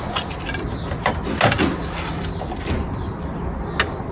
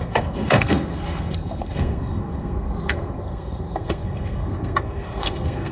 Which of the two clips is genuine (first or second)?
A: first